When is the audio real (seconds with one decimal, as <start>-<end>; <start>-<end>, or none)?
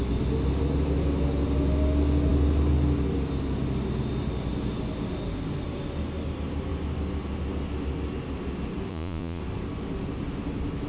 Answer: 0.0-8.9; 9.4-10.9